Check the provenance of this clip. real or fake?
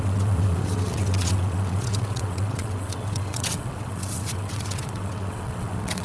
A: fake